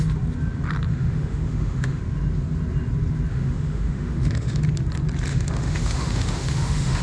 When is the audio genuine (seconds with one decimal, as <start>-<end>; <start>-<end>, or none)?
0.0-0.9; 2.0-3.3; 4.6-5.3